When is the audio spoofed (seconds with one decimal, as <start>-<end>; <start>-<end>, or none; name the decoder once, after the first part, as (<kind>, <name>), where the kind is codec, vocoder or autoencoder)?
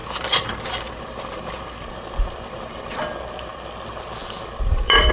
0.0-3.1 (vocoder, BigVGAN v2); 4.2-5.1